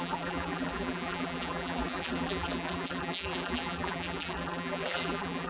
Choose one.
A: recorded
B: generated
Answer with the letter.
B